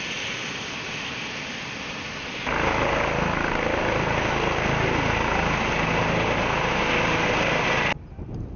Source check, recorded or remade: recorded